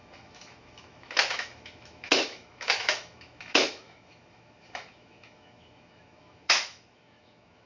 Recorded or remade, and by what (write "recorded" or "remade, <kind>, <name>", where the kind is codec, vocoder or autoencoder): remade, autoencoder, DAC-VAE